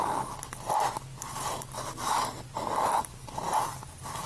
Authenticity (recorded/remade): recorded